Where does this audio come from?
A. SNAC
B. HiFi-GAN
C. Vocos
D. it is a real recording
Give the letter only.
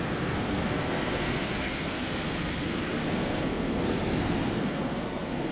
A